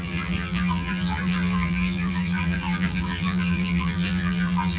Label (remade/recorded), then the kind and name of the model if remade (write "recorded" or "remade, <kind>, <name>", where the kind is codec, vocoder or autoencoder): remade, vocoder, BigVGAN v2